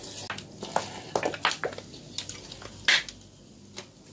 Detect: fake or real real